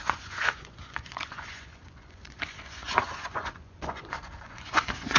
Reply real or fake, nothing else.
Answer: fake